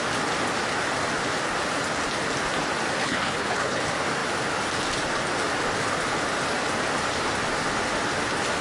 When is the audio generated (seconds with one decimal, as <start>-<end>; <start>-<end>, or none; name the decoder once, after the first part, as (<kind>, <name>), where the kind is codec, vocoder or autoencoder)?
3.0-3.8 (codec, HILCodec)